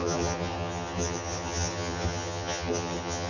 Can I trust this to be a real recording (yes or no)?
no